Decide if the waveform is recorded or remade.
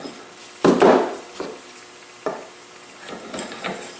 recorded